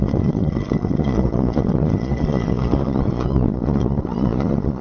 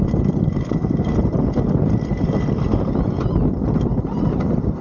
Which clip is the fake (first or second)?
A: first